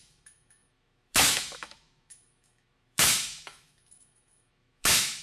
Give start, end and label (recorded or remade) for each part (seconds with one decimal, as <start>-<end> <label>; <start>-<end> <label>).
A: 0.0-5.2 remade